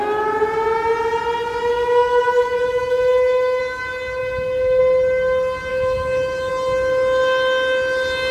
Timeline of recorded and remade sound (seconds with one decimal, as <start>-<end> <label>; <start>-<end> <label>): 0.0-1.7 recorded; 1.7-3.6 remade; 3.6-4.2 recorded; 4.2-4.8 remade; 4.8-5.7 recorded; 5.7-6.5 remade; 6.5-8.3 recorded